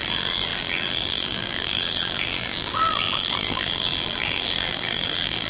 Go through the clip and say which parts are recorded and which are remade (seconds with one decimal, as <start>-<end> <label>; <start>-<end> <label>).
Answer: 0.0-5.5 remade